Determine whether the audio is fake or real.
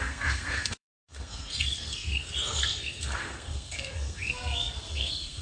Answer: fake